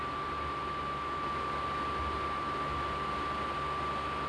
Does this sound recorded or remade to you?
recorded